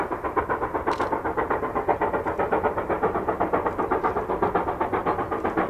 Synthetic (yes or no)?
no